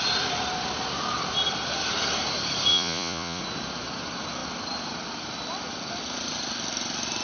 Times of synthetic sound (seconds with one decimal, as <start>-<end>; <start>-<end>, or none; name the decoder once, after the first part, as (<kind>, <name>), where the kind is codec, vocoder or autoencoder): 2.7-3.4 (vocoder, Vocos)